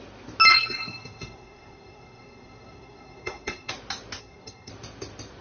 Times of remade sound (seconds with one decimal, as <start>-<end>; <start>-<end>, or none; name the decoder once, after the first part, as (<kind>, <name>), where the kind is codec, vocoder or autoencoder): 0.5-3.7 (codec, SNAC); 4.2-4.7